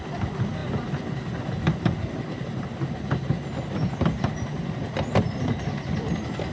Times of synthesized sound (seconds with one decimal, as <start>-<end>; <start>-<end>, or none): none